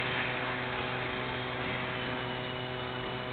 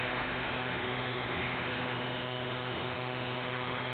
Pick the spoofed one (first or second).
second